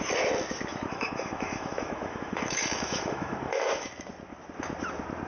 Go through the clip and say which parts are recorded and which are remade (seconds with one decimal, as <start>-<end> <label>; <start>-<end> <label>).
0.0-0.7 recorded; 0.7-3.9 remade; 3.9-5.3 recorded